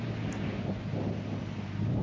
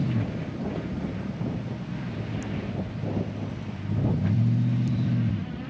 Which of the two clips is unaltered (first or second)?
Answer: first